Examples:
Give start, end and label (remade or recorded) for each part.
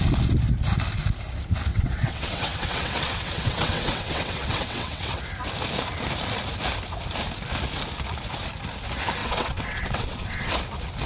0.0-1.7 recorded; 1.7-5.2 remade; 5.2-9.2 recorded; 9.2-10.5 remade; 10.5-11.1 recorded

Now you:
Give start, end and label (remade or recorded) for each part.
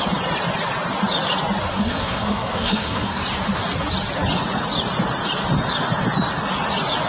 0.0-1.7 recorded; 1.7-3.2 remade; 3.2-7.1 recorded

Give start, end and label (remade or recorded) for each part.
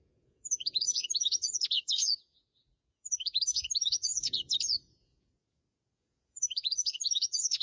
0.0-7.6 remade